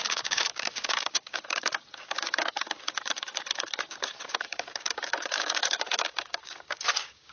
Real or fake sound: fake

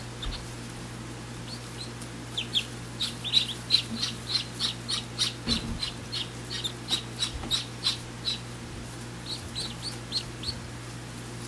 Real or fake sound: real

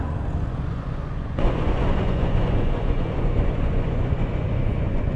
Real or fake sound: fake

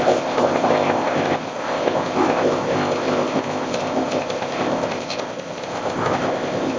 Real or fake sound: fake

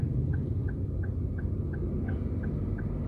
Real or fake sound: real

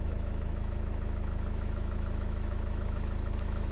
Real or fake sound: fake